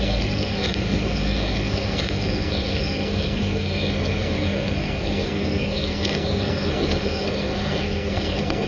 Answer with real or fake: fake